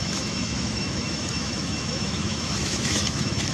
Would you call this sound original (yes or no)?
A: no